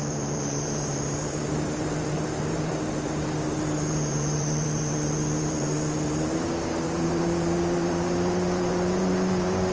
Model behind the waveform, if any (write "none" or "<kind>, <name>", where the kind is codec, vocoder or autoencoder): vocoder, BigVGAN v2